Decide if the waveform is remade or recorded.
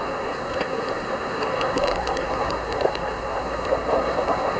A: remade